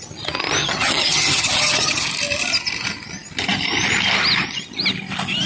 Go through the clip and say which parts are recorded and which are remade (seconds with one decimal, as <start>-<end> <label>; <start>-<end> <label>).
0.0-0.6 recorded; 0.6-2.1 remade; 2.1-5.5 recorded